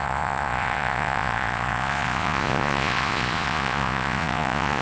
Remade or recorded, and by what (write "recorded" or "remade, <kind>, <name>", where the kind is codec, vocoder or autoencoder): remade, vocoder, Vocos